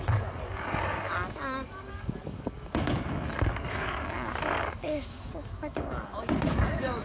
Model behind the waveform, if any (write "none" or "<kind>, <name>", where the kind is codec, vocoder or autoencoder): codec, DAC